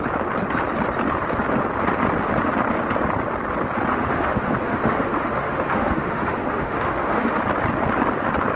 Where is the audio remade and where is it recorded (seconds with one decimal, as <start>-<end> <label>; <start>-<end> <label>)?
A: 0.0-3.9 recorded; 3.9-7.4 remade; 7.4-8.6 recorded